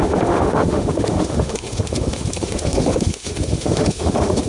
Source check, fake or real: fake